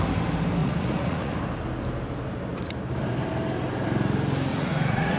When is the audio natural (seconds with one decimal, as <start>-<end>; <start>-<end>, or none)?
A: 0.0-0.6; 1.3-4.5